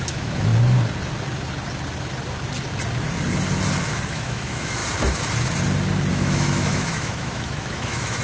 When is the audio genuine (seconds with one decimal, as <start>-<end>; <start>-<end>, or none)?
0.5-4.1; 4.8-6.1